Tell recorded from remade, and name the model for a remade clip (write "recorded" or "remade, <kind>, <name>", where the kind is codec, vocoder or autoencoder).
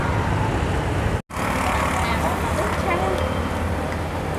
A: recorded